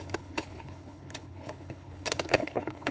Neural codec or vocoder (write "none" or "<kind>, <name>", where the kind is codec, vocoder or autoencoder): codec, HILCodec